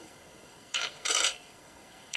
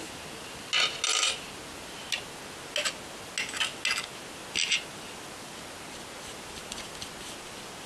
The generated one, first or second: first